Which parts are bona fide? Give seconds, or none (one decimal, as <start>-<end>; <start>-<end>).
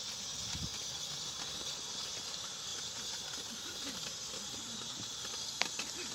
0.0-6.1